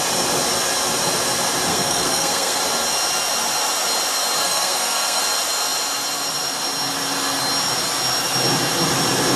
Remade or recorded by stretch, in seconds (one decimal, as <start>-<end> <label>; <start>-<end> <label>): 0.0-1.7 recorded; 1.7-2.6 remade; 2.6-4.4 recorded; 4.4-5.2 remade; 5.2-9.4 recorded

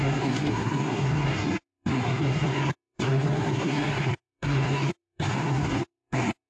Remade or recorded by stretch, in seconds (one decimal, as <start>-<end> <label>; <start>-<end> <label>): 0.0-6.5 remade